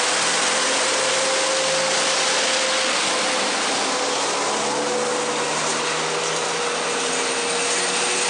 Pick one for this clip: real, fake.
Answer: real